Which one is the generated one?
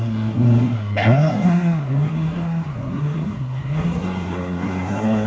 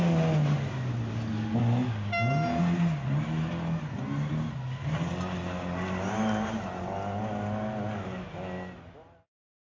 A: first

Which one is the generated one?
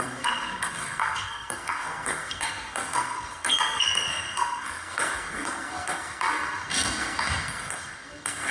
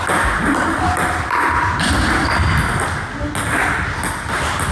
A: first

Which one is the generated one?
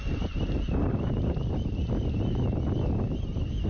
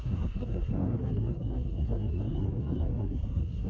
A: second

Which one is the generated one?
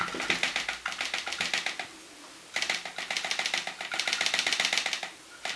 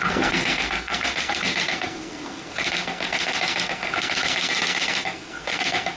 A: second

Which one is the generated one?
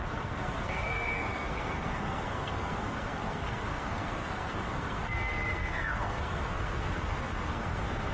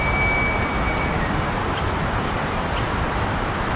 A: first